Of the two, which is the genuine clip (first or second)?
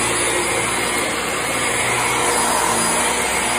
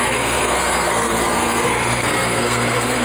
first